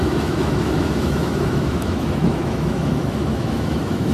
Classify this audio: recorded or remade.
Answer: remade